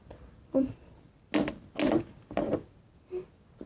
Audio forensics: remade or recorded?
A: recorded